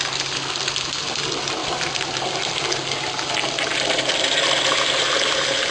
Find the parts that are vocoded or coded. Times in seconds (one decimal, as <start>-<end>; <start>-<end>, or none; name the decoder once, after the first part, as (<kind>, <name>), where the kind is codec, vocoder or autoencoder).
none